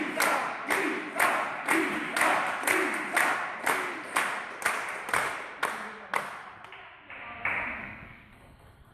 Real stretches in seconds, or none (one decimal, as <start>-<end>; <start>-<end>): 0.0-7.8